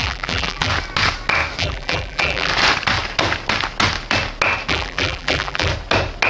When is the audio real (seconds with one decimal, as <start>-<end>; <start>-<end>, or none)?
0.7-1.6; 2.5-4.7; 5.7-6.3